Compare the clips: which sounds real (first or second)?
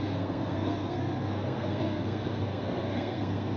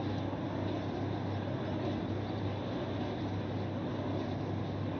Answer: second